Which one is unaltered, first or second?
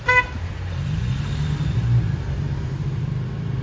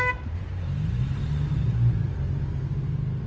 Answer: second